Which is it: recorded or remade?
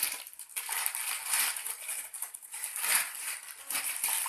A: recorded